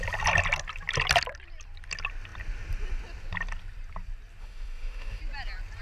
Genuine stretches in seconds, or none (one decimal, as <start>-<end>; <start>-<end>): 0.0-4.4; 5.2-5.8